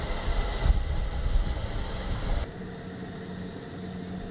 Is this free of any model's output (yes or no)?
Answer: yes